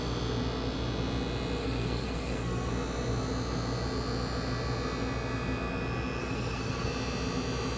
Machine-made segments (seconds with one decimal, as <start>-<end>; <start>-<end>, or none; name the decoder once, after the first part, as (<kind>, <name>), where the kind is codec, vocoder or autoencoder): 1.6-2.7 (codec, SNAC); 6.2-6.9